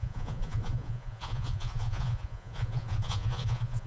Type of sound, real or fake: fake